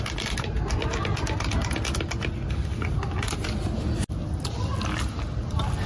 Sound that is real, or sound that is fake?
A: real